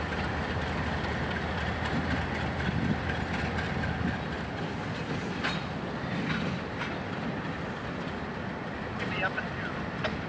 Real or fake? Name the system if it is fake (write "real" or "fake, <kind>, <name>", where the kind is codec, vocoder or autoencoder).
real